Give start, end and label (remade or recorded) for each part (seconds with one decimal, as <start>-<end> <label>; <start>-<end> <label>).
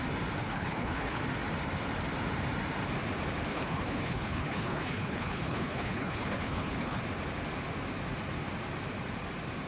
0.0-0.4 recorded; 0.4-1.2 remade; 1.2-3.5 recorded; 3.5-7.0 remade; 7.0-9.7 recorded